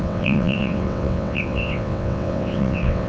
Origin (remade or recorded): remade